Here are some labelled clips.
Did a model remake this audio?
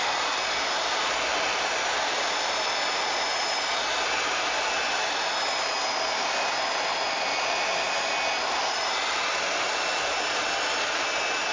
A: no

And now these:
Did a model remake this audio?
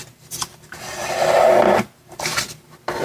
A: no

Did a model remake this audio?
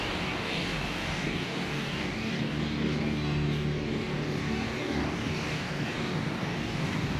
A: yes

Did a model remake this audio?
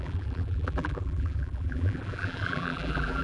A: yes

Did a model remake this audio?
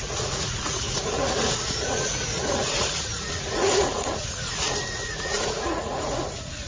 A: yes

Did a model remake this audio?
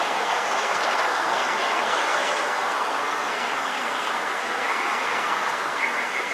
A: yes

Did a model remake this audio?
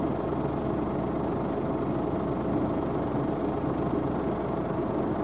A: no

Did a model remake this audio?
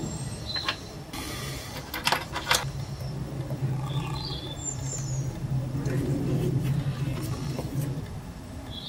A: no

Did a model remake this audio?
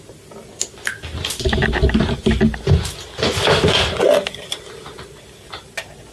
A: no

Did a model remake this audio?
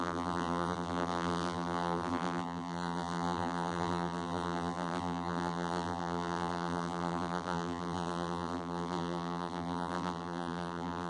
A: yes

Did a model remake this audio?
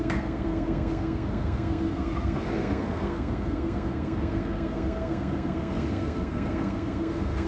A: yes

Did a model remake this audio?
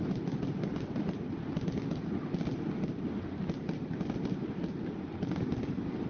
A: no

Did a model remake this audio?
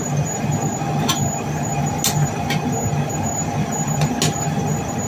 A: no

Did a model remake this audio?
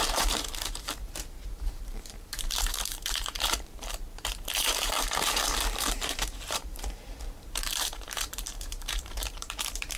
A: yes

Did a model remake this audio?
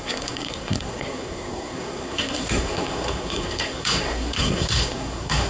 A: yes